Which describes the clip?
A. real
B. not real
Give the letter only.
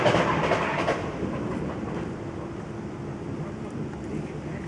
A